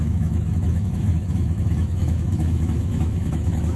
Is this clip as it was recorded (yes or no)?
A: no